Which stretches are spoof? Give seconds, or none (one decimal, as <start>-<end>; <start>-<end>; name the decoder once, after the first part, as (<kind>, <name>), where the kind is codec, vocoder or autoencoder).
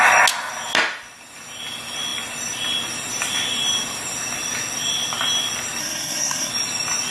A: 5.8-6.5 (codec, SNAC)